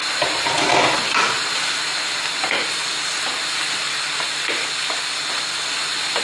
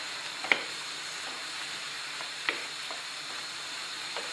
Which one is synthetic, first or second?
second